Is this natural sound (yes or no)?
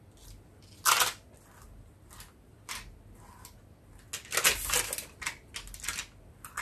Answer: yes